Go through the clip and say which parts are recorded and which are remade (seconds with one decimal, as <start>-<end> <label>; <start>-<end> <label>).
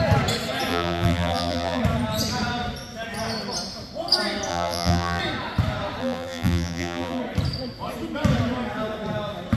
0.0-0.7 recorded; 0.7-1.8 remade; 1.8-4.5 recorded; 4.5-5.2 remade; 5.2-6.0 recorded; 6.0-7.2 remade; 7.2-9.6 recorded